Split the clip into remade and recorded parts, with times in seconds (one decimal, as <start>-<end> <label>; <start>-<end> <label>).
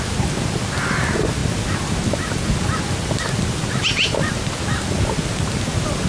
0.0-6.1 recorded